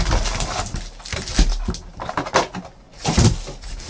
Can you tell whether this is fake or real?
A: real